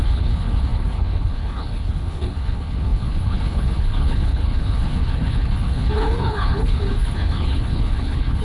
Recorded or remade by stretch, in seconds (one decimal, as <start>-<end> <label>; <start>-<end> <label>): 0.0-8.4 remade